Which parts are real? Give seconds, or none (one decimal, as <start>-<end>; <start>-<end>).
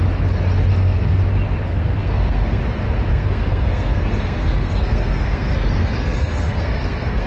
0.0-0.7; 1.2-1.7; 2.6-3.1